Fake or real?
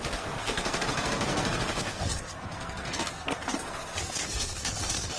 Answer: fake